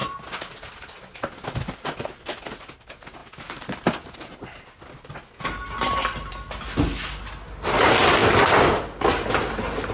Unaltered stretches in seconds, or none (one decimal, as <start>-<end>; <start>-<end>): 0.0-9.9